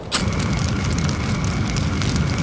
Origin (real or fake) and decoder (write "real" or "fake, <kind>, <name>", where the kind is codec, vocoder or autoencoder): real